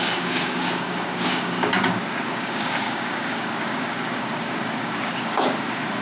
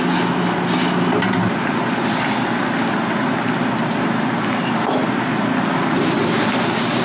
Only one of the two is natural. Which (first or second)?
second